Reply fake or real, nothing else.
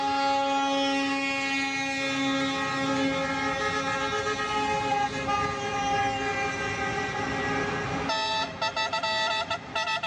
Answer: real